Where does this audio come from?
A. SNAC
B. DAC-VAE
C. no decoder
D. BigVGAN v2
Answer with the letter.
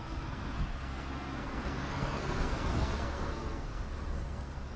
A